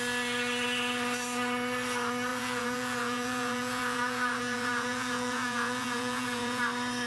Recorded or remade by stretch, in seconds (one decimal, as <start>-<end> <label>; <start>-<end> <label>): 0.0-2.3 recorded; 2.3-6.6 remade; 6.6-7.1 recorded